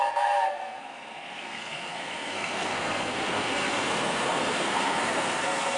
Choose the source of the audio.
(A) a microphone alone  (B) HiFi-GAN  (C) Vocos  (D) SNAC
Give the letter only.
D